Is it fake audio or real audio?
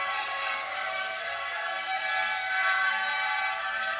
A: fake